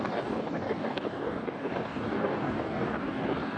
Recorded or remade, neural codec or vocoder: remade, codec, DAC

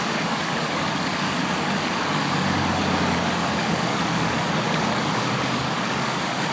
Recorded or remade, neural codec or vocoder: remade, codec, DAC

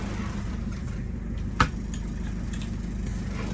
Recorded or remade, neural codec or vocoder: recorded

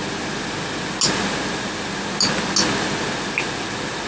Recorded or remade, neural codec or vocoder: recorded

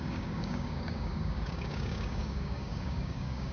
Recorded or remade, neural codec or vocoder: remade, codec, DAC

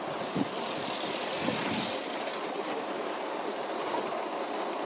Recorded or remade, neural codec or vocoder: recorded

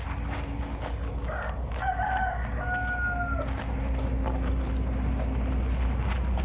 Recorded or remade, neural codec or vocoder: recorded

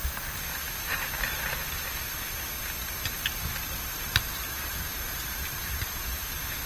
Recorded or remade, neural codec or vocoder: recorded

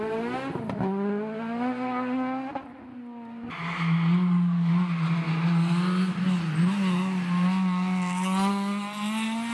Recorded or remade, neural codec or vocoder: recorded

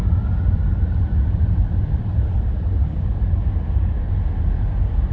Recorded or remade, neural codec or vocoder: recorded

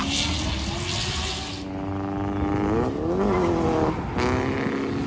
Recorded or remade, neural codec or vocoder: recorded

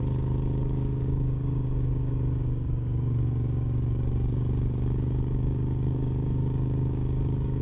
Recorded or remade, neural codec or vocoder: remade, codec, DAC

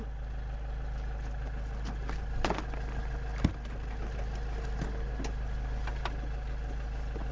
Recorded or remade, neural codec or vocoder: recorded